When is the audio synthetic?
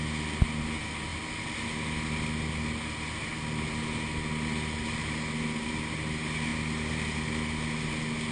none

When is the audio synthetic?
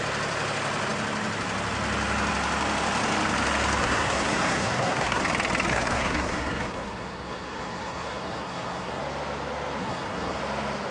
3.8-5.2 (codec, SNAC); 5.7-9.0; 9.8-10.4